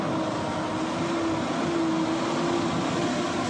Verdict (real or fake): real